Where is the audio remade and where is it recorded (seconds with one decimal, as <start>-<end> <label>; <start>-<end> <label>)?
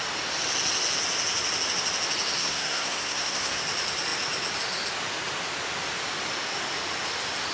0.0-2.4 recorded; 2.4-3.6 remade; 3.6-7.5 recorded